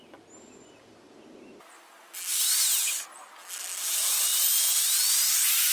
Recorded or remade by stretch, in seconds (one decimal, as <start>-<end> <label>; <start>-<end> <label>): 0.0-5.7 recorded